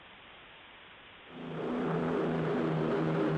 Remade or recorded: remade